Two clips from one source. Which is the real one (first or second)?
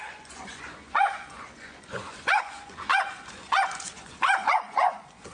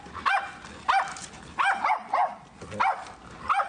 second